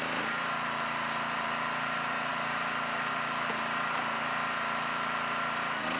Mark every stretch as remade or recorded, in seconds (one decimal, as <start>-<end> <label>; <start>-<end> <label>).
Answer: 0.0-6.0 recorded